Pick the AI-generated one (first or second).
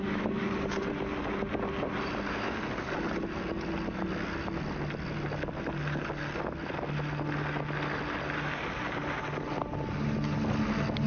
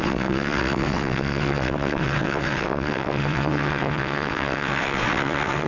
second